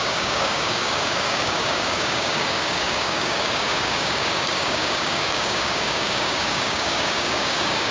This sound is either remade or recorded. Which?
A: remade